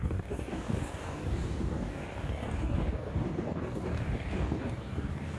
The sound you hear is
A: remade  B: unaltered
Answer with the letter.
A